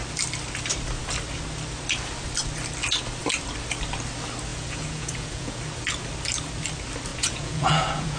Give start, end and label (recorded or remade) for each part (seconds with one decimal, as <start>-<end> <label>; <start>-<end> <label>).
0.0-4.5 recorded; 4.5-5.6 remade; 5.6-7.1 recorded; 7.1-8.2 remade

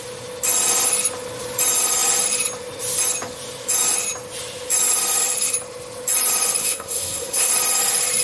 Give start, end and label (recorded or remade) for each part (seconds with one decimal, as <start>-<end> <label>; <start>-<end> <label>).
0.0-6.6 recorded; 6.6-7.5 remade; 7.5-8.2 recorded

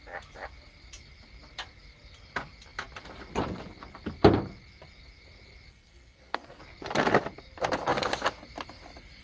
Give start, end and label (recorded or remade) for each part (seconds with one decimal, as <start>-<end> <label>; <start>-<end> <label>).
0.0-5.7 recorded; 5.7-6.6 remade; 6.6-9.2 recorded

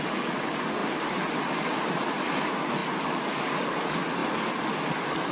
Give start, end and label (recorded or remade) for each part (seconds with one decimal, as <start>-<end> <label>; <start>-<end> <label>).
0.0-0.8 recorded; 0.8-1.4 remade; 1.4-5.3 recorded